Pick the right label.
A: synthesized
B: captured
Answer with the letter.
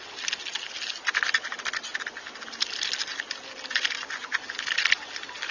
B